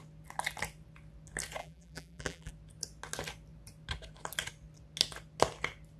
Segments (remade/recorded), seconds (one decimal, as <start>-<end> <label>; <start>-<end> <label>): 0.0-1.6 recorded; 1.6-2.5 remade; 2.5-6.0 recorded